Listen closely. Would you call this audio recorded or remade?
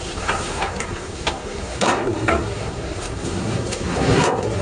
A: remade